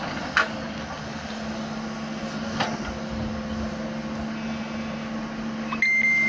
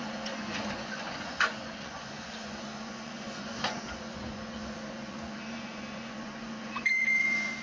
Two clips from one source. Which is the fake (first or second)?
second